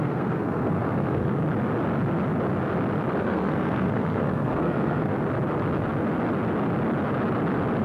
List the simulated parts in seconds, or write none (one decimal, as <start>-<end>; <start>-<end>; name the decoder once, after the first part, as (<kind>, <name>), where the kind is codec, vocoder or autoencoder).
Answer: 0.0-1.4 (codec, SNAC); 3.2-5.1